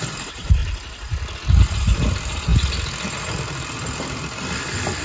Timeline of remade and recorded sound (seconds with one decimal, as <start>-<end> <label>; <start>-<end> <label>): 0.0-0.6 remade; 0.6-1.6 recorded; 1.6-2.5 remade; 2.5-5.0 recorded